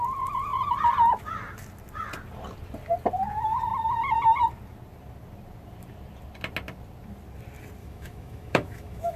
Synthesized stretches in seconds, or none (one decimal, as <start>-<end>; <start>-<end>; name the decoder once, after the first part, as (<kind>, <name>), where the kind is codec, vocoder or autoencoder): 7.8-9.2 (autoencoder, DAC-VAE)